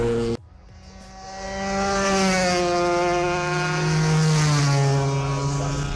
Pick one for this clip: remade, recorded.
recorded